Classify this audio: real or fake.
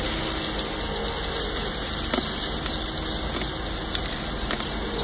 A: real